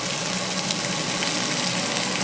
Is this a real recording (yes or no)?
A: yes